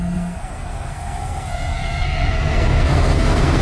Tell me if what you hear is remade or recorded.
remade